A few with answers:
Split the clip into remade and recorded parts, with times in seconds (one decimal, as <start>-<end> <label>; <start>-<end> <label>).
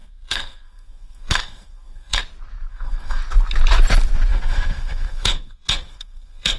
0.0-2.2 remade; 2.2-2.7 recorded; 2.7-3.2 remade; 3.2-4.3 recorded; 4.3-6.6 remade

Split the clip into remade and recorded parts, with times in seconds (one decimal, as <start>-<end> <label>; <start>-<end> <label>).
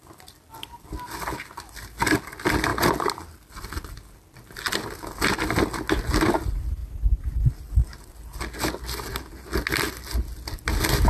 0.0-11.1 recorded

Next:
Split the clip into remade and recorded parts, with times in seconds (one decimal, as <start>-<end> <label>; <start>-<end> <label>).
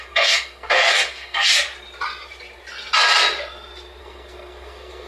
0.0-1.5 remade; 1.5-4.0 recorded; 4.0-5.1 remade